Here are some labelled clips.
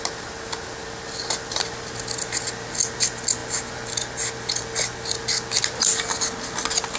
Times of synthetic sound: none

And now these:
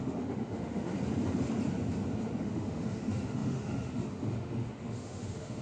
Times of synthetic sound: 0.0-0.9 (autoencoder, DAC-VAE); 2.4-5.6

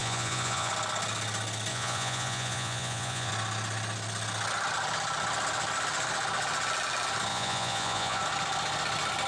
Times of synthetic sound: 0.0-0.7 (vocoder, Vocos); 1.7-3.3; 7.3-8.2

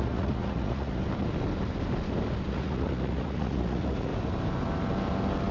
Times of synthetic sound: 0.0-1.0 (vocoder, Vocos); 2.5-4.1

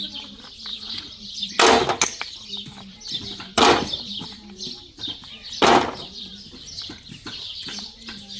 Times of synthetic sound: 0.7-1.5 (vocoder, Vocos)

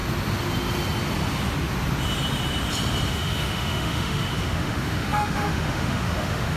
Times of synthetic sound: 3.1-6.6 (autoencoder, DAC-VAE)